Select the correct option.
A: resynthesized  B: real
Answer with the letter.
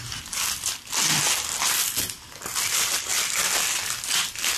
B